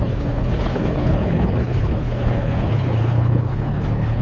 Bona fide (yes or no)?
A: no